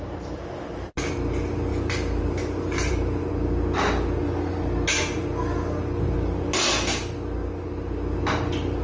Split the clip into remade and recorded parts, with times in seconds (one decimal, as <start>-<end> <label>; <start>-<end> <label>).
0.0-1.7 recorded; 1.7-3.3 remade; 3.3-8.8 recorded